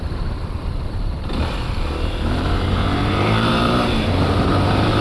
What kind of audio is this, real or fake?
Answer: fake